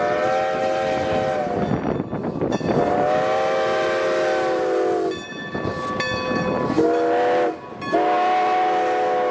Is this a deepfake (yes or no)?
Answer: no